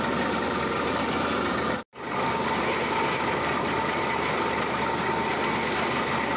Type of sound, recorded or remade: recorded